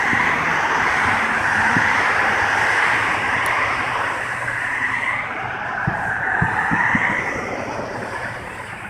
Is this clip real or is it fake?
fake